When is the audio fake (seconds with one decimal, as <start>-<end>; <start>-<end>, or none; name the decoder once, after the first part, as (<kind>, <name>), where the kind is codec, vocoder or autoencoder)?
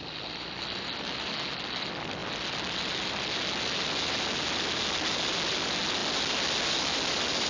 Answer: none